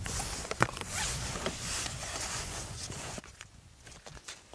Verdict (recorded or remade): remade